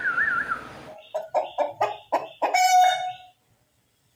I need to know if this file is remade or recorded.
recorded